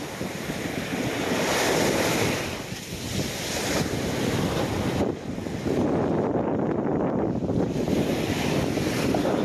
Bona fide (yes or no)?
yes